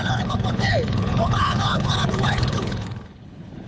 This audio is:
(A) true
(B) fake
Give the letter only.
B